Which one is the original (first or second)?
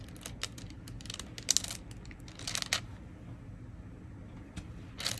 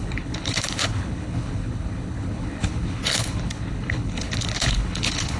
first